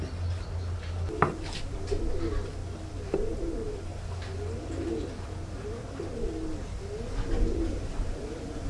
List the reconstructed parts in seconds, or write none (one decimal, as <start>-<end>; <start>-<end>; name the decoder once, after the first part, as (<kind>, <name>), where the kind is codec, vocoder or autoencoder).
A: none